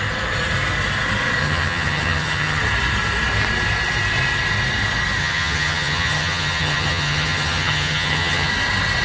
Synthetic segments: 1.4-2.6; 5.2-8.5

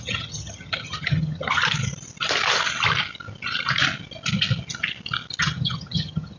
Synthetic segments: 0.0-1.6; 5.4-6.4